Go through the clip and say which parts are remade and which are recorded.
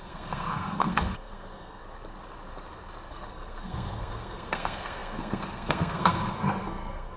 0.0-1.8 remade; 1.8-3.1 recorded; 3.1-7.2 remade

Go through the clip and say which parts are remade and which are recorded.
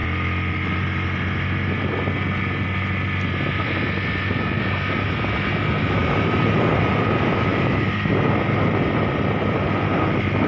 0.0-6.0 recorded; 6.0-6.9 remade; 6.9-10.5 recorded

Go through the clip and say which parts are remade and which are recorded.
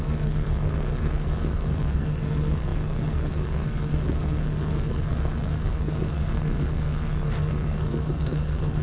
0.0-8.8 remade